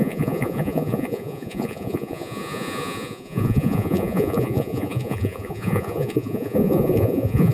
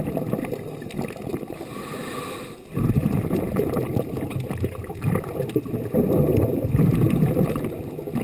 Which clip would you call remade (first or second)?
first